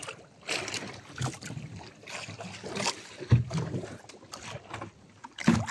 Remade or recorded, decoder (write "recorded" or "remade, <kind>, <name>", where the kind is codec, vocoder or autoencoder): recorded